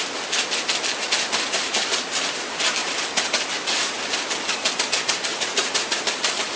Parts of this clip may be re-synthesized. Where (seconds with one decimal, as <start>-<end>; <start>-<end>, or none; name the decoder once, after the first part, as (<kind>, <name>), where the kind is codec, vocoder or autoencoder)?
5.3-6.0 (vocoder, Vocos)